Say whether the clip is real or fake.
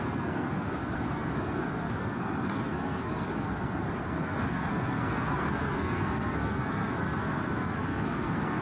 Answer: fake